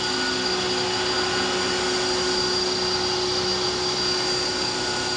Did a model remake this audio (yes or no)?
no